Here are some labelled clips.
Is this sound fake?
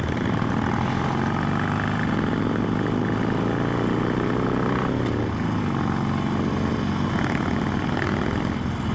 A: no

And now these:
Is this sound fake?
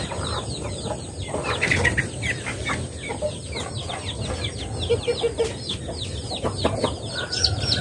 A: no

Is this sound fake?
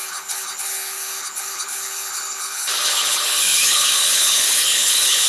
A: yes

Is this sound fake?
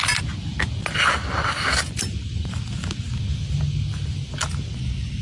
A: no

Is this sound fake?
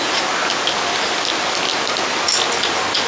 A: no